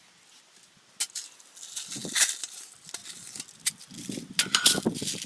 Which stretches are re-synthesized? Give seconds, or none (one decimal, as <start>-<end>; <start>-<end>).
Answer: none